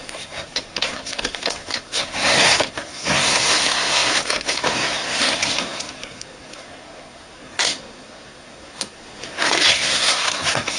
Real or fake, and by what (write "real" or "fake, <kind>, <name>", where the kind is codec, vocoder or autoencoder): fake, codec, SNAC